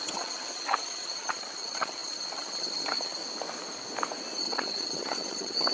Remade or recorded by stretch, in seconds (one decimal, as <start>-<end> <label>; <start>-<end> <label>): 0.0-3.2 remade; 3.2-4.4 recorded; 4.4-5.7 remade